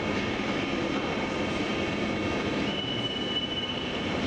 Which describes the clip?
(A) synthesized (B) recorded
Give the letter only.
A